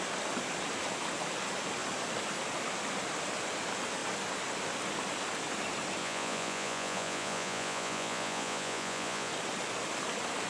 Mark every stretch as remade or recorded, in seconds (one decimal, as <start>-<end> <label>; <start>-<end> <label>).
0.0-6.0 recorded; 6.0-9.3 remade; 9.3-10.5 recorded